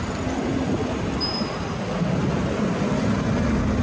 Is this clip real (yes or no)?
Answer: yes